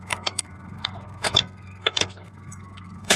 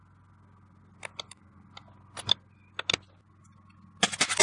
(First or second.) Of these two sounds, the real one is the second